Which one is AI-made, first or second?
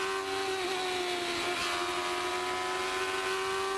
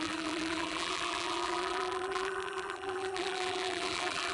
second